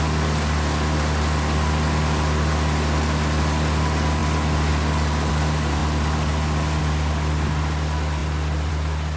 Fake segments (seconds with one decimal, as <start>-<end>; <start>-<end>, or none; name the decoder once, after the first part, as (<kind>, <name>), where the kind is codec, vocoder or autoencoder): none